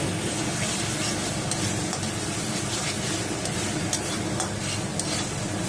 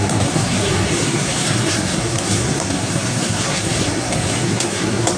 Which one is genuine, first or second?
first